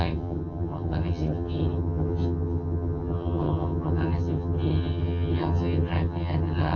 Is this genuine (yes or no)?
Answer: no